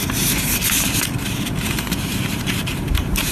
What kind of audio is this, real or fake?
fake